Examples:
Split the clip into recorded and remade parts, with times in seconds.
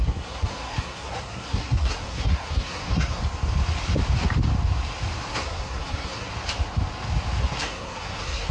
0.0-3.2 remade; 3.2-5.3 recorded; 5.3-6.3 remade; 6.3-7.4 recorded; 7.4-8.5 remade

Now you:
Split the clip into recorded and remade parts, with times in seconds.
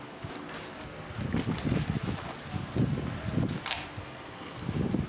0.0-4.0 recorded; 4.0-4.6 remade; 4.6-5.1 recorded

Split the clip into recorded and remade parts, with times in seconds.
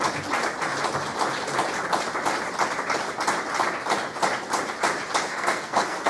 0.0-5.3 recorded; 5.3-6.1 remade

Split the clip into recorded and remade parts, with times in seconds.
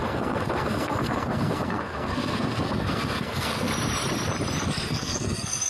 0.0-3.7 remade; 3.7-4.7 recorded; 4.7-5.7 remade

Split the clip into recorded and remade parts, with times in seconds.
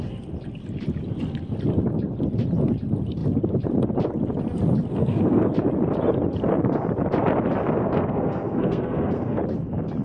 0.0-4.9 recorded; 4.9-5.5 remade; 5.5-7.8 recorded; 7.8-9.4 remade; 9.4-10.0 recorded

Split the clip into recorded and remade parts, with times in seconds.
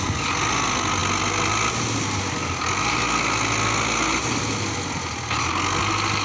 0.0-6.2 recorded